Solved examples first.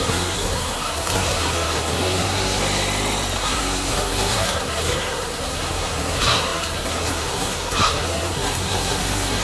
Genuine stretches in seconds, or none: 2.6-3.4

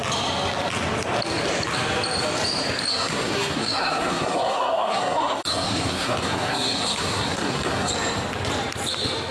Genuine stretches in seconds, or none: 0.0-2.9; 7.9-9.3

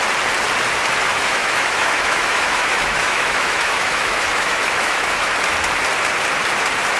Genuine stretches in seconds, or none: 0.0-1.1; 5.3-7.0

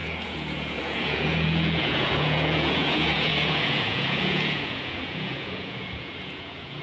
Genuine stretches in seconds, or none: none

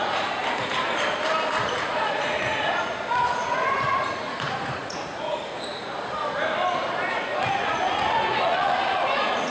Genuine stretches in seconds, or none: 0.4-1.6; 5.5-6.7

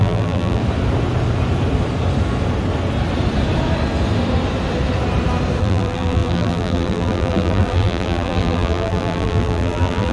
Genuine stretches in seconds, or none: 0.6-5.6

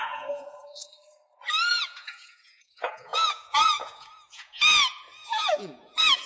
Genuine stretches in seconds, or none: 1.0-1.7

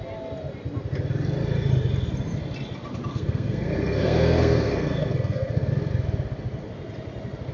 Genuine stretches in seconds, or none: 0.0-3.1; 5.7-7.5